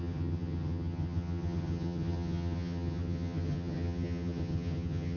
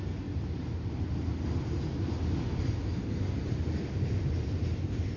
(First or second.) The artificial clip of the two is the first